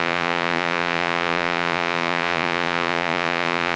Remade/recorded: remade